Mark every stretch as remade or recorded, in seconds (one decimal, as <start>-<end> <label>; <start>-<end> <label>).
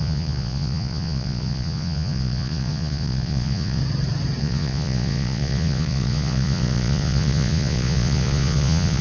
0.0-3.8 remade; 3.8-4.4 recorded; 4.4-9.0 remade